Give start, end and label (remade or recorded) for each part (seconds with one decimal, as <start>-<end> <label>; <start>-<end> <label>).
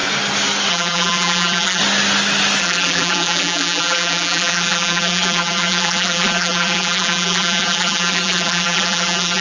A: 0.0-0.7 recorded; 0.7-1.8 remade; 1.8-2.6 recorded; 2.6-9.4 remade